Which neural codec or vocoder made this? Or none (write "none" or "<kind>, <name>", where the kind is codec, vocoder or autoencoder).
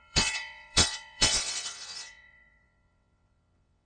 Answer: vocoder, WaveNeXt